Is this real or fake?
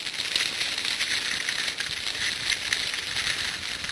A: real